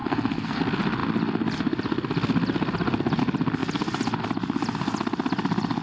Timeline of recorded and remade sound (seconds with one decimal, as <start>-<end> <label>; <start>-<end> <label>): 0.0-0.6 remade; 0.6-5.8 recorded